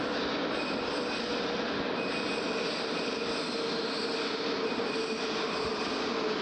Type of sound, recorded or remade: recorded